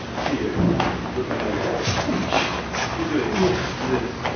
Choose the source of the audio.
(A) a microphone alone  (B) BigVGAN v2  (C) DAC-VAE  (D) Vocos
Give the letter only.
A